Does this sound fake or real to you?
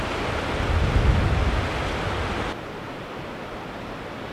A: real